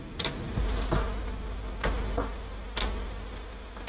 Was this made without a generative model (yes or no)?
yes